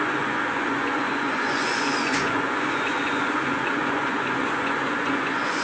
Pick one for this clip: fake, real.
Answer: fake